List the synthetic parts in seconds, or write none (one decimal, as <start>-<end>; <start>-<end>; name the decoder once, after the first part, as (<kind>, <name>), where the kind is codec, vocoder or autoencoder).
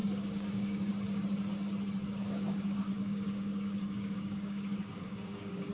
0.0-0.9 (codec, DAC); 2.0-5.7